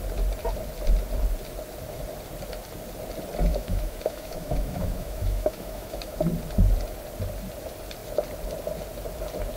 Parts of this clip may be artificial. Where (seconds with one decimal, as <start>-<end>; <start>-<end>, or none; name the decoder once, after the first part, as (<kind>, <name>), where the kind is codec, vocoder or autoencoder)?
3.5-6.2 (autoencoder, DAC-VAE)